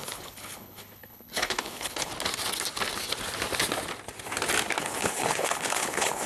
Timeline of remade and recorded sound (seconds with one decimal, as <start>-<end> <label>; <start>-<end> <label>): 0.0-2.1 remade; 2.1-4.8 recorded; 4.8-6.3 remade